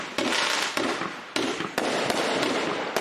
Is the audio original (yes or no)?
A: yes